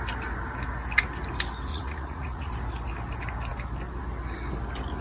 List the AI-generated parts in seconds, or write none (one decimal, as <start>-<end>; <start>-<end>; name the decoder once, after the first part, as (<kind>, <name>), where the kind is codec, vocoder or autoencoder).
1.7-2.5 (vocoder, Vocos)